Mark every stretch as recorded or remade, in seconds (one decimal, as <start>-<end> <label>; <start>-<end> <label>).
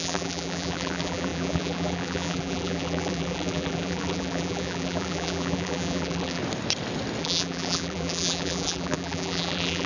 0.0-6.4 remade; 6.4-7.2 recorded; 7.2-9.9 remade